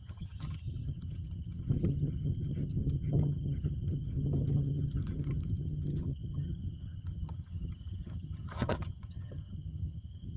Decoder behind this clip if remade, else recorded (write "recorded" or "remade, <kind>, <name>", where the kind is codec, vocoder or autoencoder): remade, vocoder, HiFi-GAN